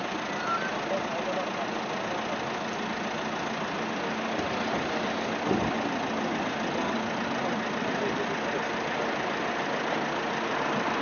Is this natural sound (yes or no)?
yes